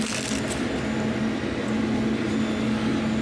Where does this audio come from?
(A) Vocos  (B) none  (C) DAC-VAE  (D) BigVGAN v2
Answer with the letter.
B